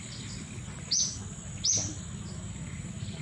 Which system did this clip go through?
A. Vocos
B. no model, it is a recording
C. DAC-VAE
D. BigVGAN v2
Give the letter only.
B